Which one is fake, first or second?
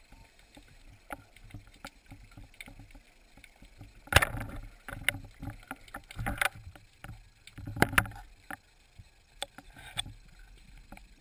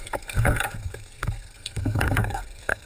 second